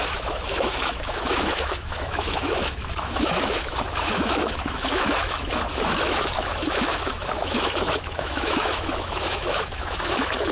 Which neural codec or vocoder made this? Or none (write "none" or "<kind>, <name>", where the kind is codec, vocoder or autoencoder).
autoencoder, DAC-VAE